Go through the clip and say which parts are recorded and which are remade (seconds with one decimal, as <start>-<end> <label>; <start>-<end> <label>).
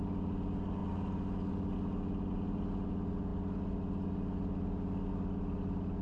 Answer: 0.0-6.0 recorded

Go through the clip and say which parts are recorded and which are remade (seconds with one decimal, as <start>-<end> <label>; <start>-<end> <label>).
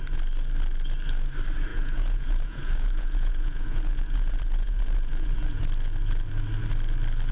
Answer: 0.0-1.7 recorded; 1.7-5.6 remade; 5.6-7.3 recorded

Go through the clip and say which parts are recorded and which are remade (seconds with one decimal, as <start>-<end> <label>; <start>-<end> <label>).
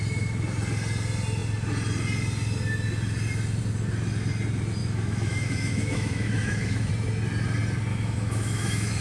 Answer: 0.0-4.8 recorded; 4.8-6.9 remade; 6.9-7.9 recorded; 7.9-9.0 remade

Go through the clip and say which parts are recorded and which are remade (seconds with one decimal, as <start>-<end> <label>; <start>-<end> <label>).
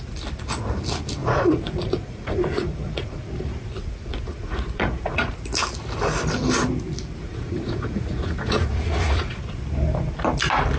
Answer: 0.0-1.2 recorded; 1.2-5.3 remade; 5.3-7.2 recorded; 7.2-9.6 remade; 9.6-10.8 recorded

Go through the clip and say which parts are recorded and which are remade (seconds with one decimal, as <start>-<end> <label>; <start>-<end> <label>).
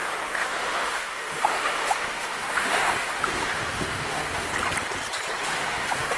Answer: 0.0-4.5 remade; 4.5-5.4 recorded; 5.4-6.2 remade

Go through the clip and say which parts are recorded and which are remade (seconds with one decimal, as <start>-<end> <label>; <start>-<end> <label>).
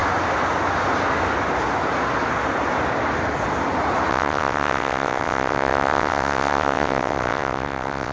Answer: 0.0-4.1 recorded; 4.1-8.1 remade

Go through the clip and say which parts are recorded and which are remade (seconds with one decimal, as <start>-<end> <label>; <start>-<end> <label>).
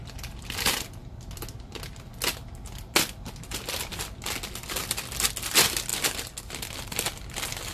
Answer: 0.0-7.7 recorded